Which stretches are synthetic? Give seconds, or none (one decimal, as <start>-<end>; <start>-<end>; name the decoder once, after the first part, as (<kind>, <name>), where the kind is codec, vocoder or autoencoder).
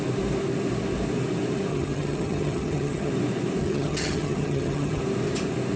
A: 1.7-3.1 (vocoder, HiFi-GAN); 3.6-5.0